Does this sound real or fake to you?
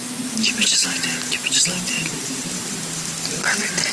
real